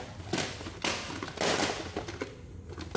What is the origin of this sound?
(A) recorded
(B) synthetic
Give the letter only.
A